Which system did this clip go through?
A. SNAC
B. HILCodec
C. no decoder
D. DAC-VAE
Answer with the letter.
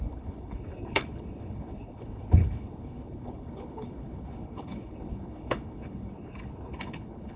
B